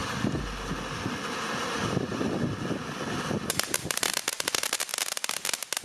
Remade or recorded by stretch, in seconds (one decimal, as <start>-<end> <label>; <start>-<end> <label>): 0.0-1.6 recorded; 1.6-2.1 remade; 2.1-3.5 recorded; 3.5-4.9 remade; 4.9-5.8 recorded